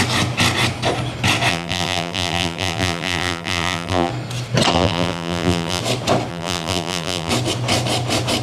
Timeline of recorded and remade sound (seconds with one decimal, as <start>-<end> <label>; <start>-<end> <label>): 0.0-1.5 recorded; 1.5-4.1 remade; 4.1-4.7 recorded; 4.7-5.8 remade; 5.8-6.3 recorded; 6.3-7.3 remade; 7.3-8.4 recorded